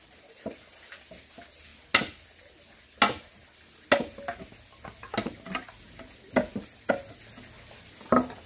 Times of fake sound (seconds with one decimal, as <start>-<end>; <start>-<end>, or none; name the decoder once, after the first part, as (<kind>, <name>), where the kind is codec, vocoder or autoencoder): none